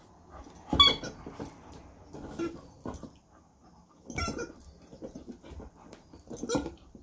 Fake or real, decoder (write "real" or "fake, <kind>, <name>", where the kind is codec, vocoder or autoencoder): real